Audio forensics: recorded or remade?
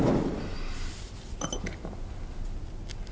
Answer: recorded